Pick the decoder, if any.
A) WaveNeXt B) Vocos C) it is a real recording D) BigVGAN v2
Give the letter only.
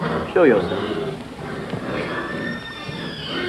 C